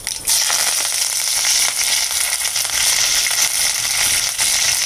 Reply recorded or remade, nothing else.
recorded